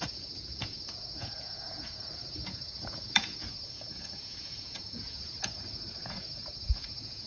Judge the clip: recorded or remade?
remade